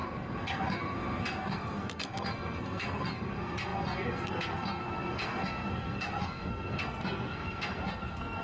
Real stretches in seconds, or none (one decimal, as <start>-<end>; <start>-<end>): none